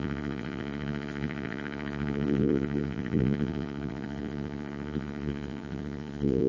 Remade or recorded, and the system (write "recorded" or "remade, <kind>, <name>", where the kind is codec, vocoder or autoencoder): remade, vocoder, Vocos